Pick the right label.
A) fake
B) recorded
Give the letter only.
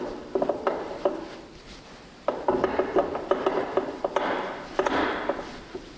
B